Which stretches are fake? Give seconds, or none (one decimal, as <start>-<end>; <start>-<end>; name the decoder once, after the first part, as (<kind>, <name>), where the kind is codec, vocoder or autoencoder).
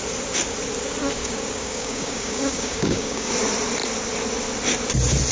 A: 1.2-3.3 (codec, DAC)